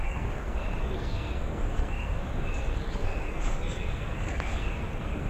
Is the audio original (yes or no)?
no